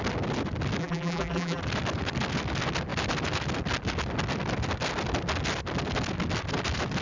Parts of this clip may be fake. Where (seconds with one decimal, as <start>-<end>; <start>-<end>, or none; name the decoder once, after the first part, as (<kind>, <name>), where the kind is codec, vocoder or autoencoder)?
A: 0.8-1.6 (vocoder, BigVGAN v2)